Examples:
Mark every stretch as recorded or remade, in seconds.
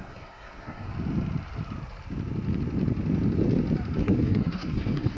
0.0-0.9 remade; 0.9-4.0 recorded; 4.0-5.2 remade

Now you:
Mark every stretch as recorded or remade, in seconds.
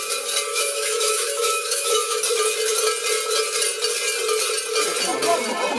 0.0-0.5 recorded; 0.5-2.2 remade; 2.2-5.8 recorded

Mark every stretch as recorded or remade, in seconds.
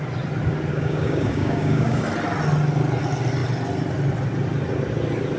0.0-0.7 recorded; 0.7-2.0 remade; 2.0-5.4 recorded